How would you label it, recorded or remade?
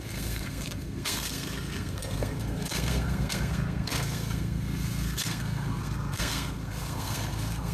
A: remade